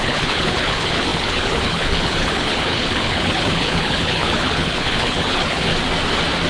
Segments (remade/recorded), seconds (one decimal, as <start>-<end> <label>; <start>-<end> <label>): 0.0-5.7 remade; 5.7-6.5 recorded